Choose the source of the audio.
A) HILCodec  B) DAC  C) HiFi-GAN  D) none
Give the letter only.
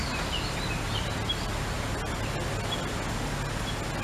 D